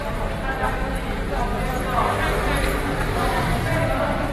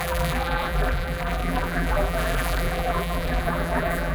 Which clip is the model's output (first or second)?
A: second